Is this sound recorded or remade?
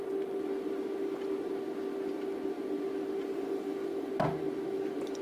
recorded